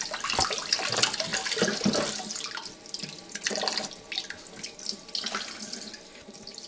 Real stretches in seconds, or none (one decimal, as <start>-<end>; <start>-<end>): 0.0-6.7